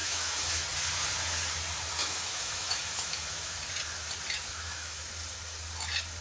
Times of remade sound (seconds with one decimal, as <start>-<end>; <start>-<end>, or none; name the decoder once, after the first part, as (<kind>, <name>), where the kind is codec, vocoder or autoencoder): 0.0-0.6 (autoencoder, DAC-VAE); 2.0-3.6; 4.5-5.0